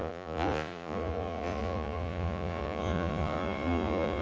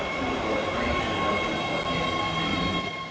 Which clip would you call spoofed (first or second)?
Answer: first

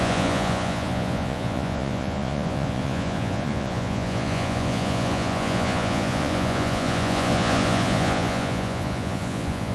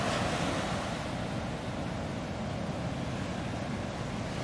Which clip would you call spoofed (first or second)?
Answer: first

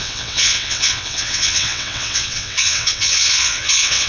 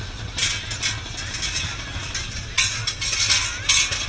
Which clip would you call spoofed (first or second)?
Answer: first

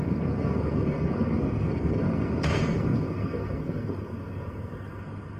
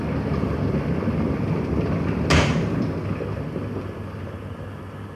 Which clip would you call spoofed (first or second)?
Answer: first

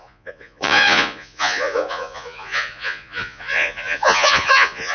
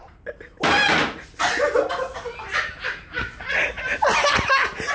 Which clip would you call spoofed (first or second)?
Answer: first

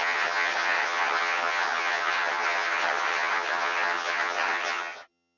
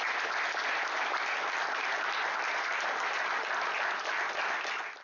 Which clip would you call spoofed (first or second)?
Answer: first